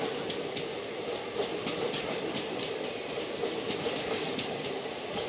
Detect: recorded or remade recorded